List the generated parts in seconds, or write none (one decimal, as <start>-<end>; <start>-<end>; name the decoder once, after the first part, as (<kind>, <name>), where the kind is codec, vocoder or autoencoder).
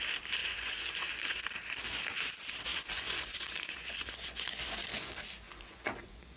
0.4-1.4 (vocoder, Vocos); 2.7-6.4